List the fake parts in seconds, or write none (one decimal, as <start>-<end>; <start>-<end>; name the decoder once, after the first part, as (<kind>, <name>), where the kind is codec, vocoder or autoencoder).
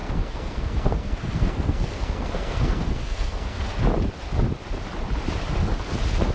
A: 0.0-3.7 (codec, SNAC)